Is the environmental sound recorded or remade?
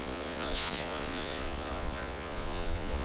remade